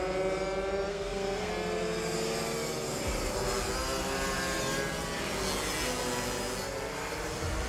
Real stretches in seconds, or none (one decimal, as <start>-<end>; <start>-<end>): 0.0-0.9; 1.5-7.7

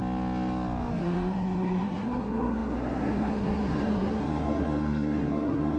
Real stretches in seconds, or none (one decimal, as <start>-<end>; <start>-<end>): 0.0-1.0

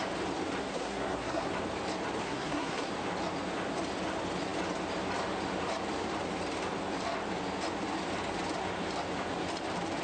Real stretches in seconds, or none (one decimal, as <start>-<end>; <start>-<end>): 0.0-0.6; 1.5-2.2; 2.9-10.0